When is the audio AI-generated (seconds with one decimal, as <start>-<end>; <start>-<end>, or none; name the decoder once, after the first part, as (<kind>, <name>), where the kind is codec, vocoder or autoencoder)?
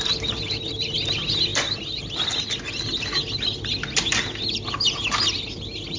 none